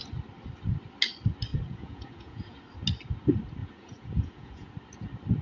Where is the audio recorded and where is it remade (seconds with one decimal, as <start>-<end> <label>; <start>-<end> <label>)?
0.0-1.5 recorded; 1.5-2.6 remade; 2.6-3.6 recorded; 3.6-4.7 remade; 4.7-5.4 recorded